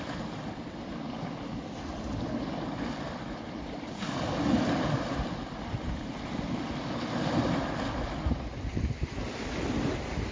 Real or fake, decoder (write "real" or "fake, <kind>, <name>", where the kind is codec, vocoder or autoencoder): real